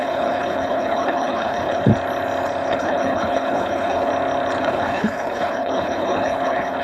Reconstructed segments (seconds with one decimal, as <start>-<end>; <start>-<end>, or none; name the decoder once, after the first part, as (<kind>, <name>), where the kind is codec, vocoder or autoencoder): 0.0-1.9 (codec, HILCodec); 2.7-4.1; 4.6-6.8